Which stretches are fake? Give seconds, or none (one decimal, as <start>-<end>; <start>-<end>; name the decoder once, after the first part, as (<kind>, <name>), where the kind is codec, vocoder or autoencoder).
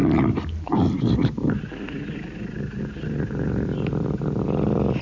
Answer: 0.0-2.8 (vocoder, BigVGAN v2)